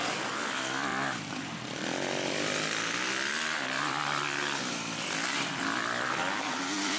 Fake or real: real